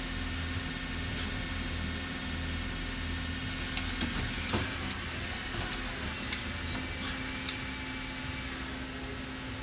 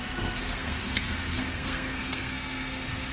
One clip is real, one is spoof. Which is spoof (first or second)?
second